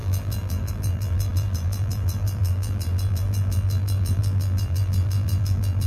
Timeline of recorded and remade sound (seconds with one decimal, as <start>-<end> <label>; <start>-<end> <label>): 0.0-5.9 remade